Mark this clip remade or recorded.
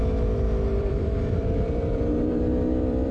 remade